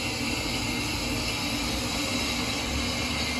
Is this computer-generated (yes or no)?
no